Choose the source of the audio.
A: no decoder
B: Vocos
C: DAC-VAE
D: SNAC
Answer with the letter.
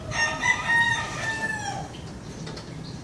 A